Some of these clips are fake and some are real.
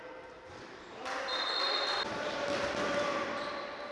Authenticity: real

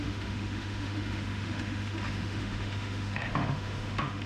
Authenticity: fake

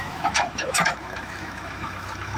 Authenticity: fake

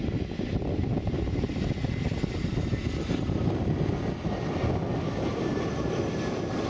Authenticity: real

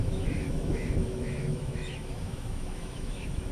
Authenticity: fake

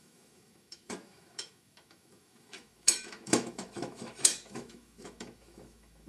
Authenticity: fake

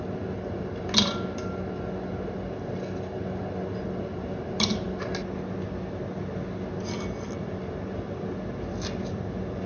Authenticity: real